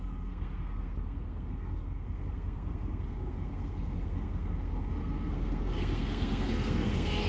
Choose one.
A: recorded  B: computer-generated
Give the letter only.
B